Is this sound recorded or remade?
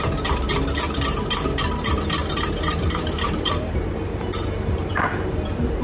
remade